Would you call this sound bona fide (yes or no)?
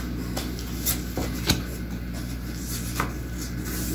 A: yes